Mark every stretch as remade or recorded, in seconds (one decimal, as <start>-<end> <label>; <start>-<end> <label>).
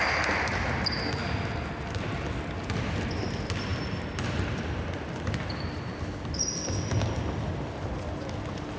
0.0-8.8 recorded